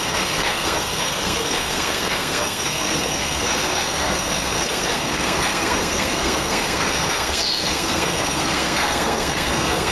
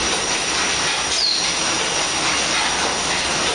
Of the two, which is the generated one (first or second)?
first